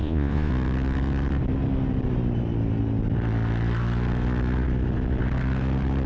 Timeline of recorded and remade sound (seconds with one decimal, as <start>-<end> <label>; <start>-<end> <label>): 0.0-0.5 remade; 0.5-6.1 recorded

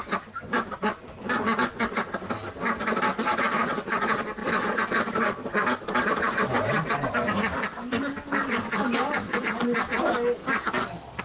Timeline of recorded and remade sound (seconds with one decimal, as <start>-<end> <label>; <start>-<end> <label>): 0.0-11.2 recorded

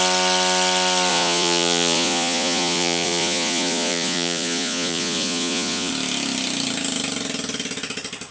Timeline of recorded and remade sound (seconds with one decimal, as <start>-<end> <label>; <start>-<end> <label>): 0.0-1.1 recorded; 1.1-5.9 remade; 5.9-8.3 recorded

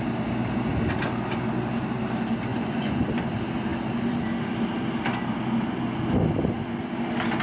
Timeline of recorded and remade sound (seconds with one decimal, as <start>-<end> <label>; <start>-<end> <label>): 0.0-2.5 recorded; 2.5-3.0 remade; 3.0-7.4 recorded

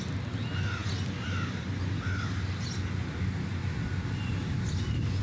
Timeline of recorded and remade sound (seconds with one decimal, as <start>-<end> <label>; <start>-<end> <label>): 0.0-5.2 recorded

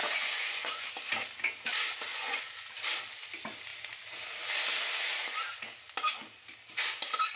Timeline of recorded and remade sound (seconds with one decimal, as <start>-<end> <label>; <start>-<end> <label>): 0.0-0.9 remade; 0.9-2.1 recorded; 2.1-2.7 remade; 2.7-7.4 recorded

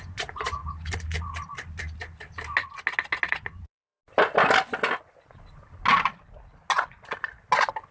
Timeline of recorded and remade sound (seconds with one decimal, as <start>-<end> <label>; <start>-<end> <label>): 0.0-0.6 remade; 0.6-3.3 recorded; 3.3-4.0 remade; 4.0-7.9 recorded

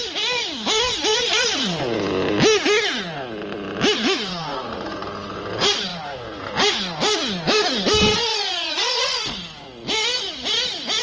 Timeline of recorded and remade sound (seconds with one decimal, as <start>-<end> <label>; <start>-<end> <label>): 0.0-1.1 recorded; 1.1-1.8 remade; 1.8-4.3 recorded; 4.3-5.0 remade; 5.0-8.3 recorded; 8.3-9.2 remade; 9.2-11.0 recorded